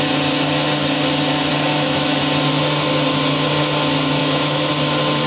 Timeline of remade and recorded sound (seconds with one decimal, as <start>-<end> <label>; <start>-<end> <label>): 0.0-1.5 recorded; 1.5-2.2 remade; 2.2-4.2 recorded; 4.2-4.7 remade; 4.7-5.3 recorded